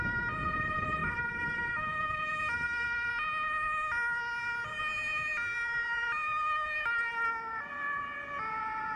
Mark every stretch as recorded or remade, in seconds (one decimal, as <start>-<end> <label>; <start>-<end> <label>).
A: 0.0-1.0 recorded; 1.0-3.1 remade; 3.1-9.0 recorded